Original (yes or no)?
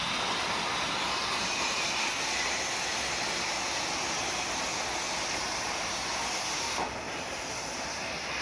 yes